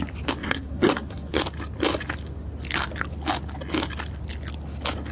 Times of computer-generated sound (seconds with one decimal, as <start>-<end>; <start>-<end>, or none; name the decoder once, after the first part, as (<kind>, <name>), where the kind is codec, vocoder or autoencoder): 0.4-1.4 (codec, SNAC)